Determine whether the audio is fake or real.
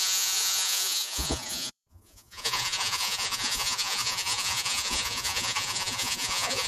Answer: fake